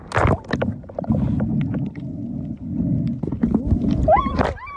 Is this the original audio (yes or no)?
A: yes